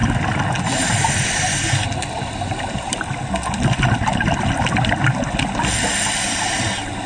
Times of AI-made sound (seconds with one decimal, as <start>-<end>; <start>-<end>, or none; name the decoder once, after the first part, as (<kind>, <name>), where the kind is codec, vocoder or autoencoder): none